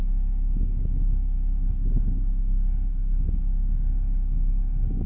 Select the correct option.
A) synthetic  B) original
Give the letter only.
A